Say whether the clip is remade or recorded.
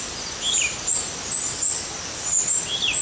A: recorded